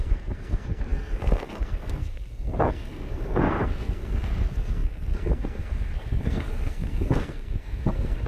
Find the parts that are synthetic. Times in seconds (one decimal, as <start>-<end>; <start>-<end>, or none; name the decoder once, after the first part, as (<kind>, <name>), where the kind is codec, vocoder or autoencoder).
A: 0.0-8.3 (codec, SNAC)